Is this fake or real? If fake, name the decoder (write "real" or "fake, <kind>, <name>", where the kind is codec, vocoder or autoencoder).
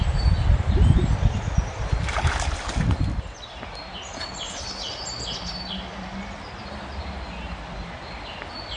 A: real